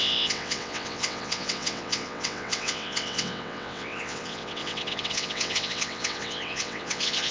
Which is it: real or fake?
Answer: fake